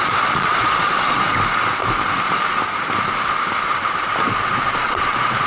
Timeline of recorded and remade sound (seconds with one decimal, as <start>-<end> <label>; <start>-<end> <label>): 0.0-1.2 remade; 1.2-4.5 recorded; 4.5-5.5 remade